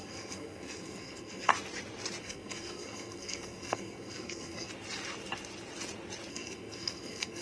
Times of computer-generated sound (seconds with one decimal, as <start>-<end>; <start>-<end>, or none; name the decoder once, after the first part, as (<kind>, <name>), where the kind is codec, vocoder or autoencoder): 0.0-1.5 (codec, SNAC); 2.2-4.7; 6.3-7.4